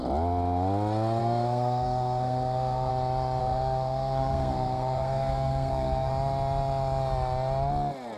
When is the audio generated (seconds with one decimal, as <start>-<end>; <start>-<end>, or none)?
1.2-2.9; 3.4-6.1